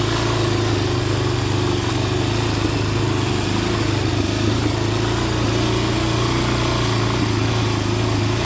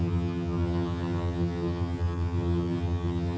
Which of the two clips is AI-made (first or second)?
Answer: second